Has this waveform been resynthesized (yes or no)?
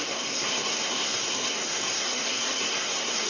yes